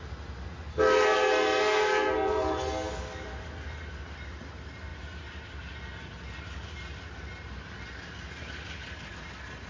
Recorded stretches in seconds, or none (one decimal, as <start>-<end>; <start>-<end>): 0.0-0.7; 2.9-9.7